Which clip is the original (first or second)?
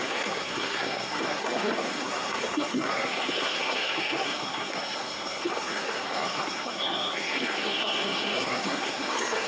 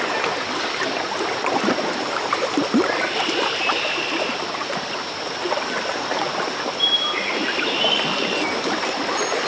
second